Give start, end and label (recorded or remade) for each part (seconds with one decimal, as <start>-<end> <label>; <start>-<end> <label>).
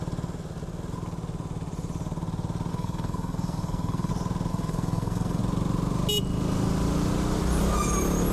0.0-2.7 recorded; 2.7-4.1 remade; 4.1-4.5 recorded; 4.5-5.4 remade; 5.4-8.3 recorded